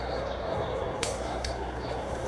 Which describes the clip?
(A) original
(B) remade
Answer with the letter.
B